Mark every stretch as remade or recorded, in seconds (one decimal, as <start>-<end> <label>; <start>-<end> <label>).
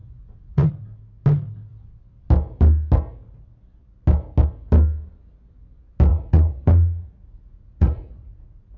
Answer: 0.0-0.7 remade; 0.7-6.1 recorded; 6.1-8.8 remade